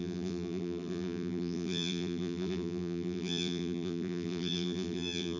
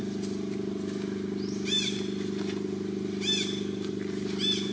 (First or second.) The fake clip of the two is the first